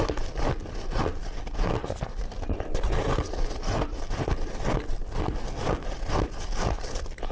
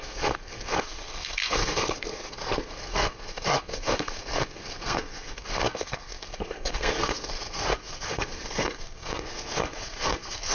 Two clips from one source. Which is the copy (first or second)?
second